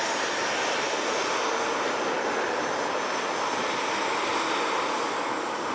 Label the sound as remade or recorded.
recorded